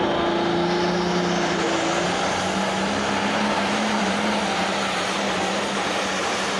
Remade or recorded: recorded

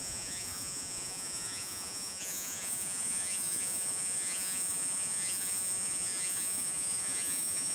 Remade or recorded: remade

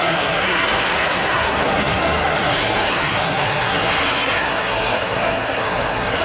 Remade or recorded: remade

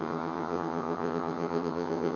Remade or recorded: remade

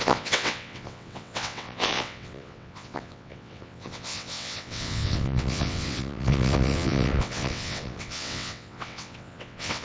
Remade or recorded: remade